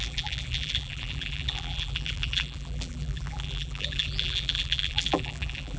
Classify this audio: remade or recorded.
remade